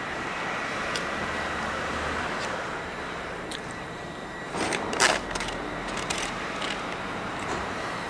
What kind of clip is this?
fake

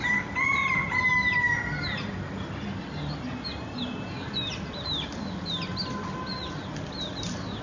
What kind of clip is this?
real